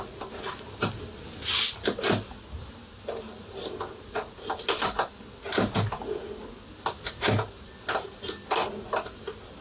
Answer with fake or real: real